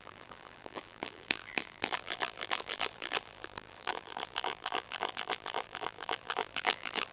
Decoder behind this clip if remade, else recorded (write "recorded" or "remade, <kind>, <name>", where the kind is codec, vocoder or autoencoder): remade, vocoder, BigVGAN v2